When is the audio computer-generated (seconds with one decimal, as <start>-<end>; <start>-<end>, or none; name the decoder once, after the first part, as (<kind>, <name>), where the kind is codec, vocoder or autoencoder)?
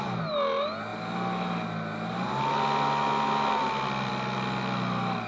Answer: none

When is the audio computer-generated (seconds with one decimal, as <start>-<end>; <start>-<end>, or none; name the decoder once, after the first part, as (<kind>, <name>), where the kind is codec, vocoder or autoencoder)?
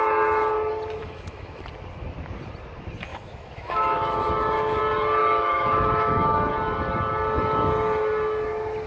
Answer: 1.0-1.6 (autoencoder, DAC-VAE); 3.1-4.8; 5.2-6.5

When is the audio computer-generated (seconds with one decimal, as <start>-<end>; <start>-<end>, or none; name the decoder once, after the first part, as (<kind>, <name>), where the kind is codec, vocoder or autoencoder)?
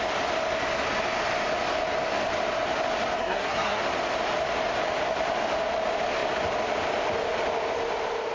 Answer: 3.2-3.8 (codec, SNAC)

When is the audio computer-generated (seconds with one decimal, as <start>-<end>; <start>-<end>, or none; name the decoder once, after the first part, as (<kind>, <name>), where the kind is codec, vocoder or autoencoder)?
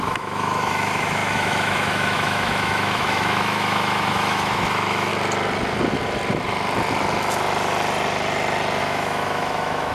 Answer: 0.0-5.1 (autoencoder, DAC-VAE); 8.8-9.9